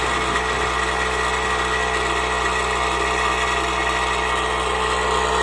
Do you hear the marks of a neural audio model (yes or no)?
no